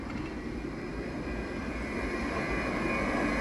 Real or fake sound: real